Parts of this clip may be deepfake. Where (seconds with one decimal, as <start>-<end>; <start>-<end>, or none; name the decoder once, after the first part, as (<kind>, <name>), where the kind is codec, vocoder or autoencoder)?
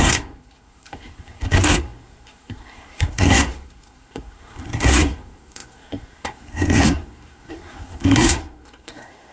0.0-9.3 (codec, SNAC)